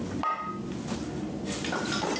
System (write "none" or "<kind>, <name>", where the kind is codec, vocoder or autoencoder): none